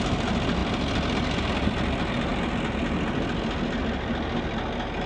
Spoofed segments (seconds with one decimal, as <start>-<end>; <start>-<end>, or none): none